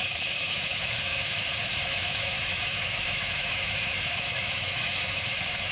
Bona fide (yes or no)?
no